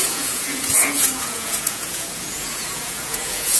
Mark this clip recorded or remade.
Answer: remade